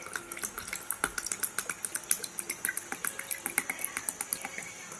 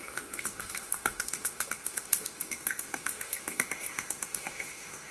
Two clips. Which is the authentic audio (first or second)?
first